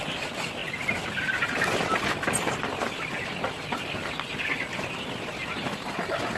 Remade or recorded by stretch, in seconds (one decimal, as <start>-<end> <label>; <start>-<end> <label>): 0.0-6.4 recorded